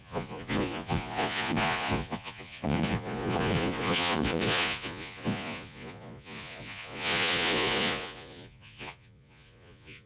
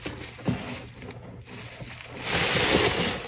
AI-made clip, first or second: first